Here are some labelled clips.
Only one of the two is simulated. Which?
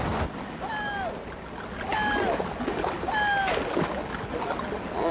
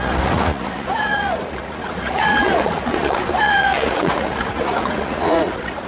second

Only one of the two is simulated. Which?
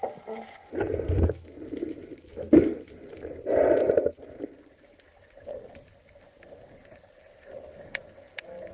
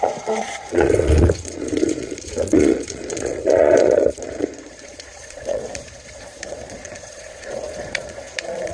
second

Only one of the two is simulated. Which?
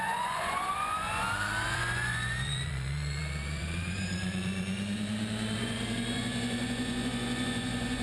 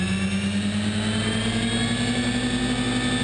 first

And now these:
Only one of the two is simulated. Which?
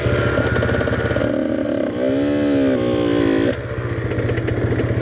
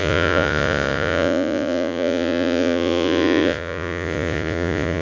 second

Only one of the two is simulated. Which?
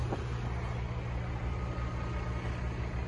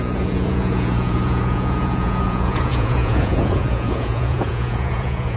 second